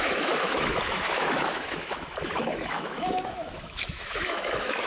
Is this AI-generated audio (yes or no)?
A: yes